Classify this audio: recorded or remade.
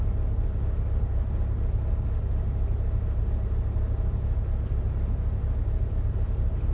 recorded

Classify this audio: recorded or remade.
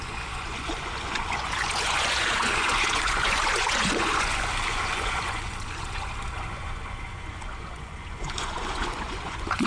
remade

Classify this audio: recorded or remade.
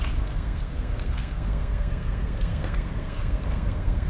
remade